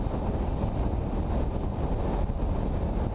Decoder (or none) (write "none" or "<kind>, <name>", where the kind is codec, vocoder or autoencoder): none